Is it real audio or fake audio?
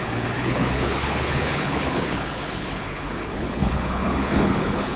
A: fake